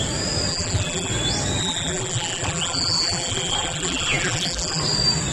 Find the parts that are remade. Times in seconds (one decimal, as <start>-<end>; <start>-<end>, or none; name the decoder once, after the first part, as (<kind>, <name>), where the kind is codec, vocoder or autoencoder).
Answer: 0.5-1.1 (vocoder, BigVGAN v2); 1.6-4.8